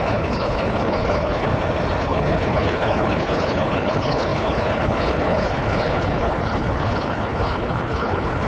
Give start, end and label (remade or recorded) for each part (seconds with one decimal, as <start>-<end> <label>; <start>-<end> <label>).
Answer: 0.0-1.5 remade; 1.5-2.0 recorded; 2.0-8.5 remade